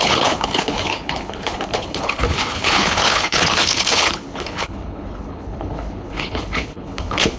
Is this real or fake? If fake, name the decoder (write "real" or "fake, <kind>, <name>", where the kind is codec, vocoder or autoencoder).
fake, codec, HILCodec